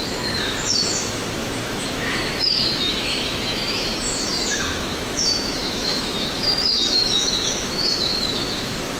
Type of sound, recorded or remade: remade